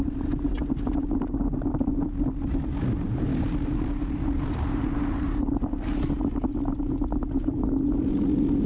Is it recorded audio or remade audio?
recorded